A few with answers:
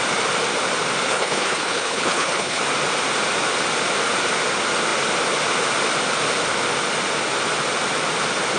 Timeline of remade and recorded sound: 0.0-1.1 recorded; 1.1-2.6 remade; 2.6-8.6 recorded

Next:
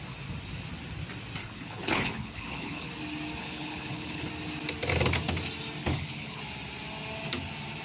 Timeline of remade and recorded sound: 0.0-1.4 recorded; 1.4-2.9 remade; 2.9-3.4 recorded; 3.4-4.3 remade; 4.3-5.8 recorded; 5.8-6.4 remade; 6.4-7.8 recorded

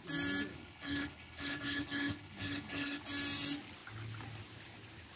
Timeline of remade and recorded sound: 0.0-0.5 recorded; 0.5-3.0 remade; 3.0-5.2 recorded

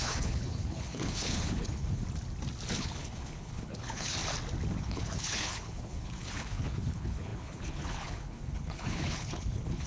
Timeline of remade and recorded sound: 0.0-2.0 remade; 2.0-2.7 recorded; 2.7-4.2 remade; 4.2-4.8 recorded; 4.8-9.9 remade